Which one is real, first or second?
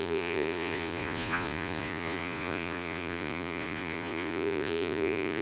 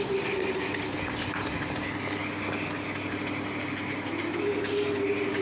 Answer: second